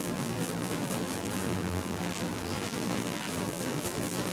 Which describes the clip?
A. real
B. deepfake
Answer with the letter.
B